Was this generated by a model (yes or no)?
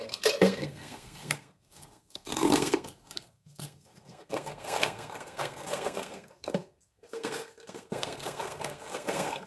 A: yes